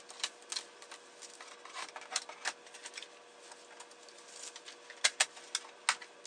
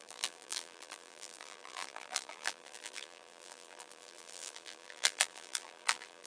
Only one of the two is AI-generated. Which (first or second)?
second